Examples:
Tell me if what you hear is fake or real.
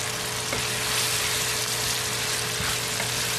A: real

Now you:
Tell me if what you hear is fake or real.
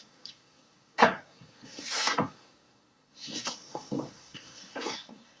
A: fake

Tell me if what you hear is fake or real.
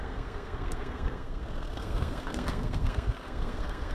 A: fake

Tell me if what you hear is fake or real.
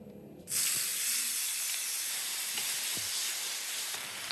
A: real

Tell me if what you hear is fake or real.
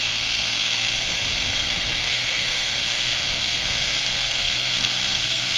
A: fake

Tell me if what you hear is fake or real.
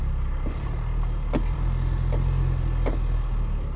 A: real